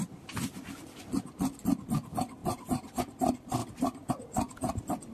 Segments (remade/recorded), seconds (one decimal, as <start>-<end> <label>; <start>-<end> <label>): 0.0-0.7 remade; 0.7-2.4 recorded; 2.4-3.0 remade; 3.0-3.6 recorded; 3.6-4.1 remade; 4.1-5.1 recorded